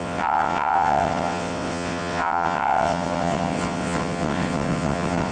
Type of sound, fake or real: fake